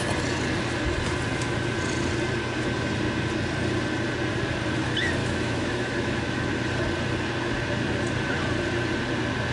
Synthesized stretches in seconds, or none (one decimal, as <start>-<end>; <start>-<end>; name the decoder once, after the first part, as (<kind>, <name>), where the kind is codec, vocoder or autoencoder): 5.2-6.5 (autoencoder, DAC-VAE)